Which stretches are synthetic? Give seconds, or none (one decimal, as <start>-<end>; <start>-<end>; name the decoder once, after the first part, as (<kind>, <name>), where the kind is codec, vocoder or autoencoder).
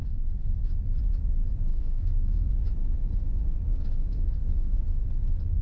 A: 1.7-2.5 (codec, SNAC); 4.0-4.8